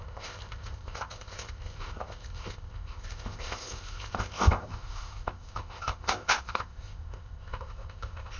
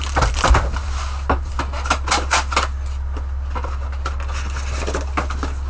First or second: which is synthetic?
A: first